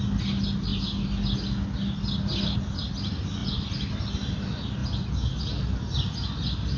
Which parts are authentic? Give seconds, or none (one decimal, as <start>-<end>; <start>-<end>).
0.0-6.8